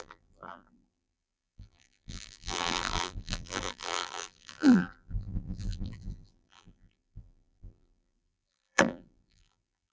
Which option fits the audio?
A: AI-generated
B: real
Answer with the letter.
A